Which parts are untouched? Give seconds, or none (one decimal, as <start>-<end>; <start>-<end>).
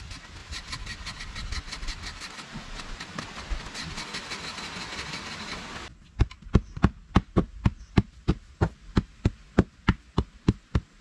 0.0-11.0